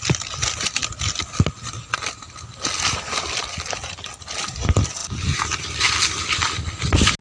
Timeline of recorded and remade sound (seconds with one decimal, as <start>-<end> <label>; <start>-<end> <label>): 0.0-7.2 recorded